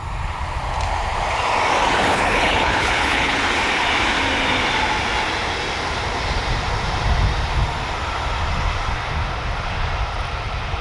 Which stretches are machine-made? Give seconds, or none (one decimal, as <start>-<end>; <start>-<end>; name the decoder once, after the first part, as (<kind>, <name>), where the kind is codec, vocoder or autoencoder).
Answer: 2.1-3.4 (codec, HILCodec)